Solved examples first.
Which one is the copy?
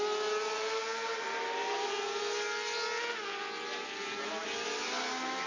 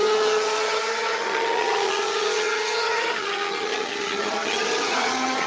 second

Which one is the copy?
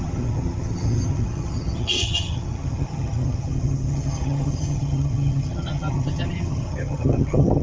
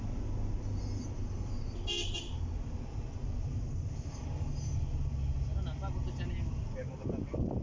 first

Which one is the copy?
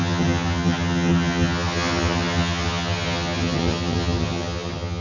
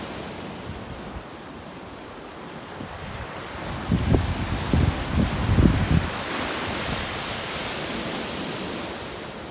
first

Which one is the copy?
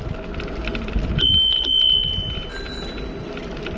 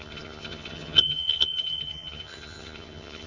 second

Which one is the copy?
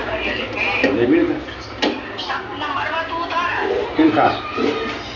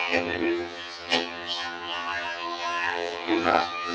second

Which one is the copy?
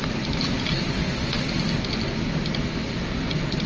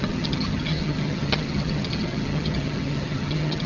second